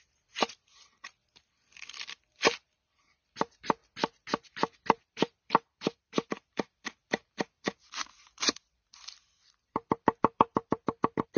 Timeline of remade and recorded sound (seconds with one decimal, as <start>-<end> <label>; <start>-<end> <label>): 0.0-3.8 remade; 3.8-5.1 recorded; 5.1-11.4 remade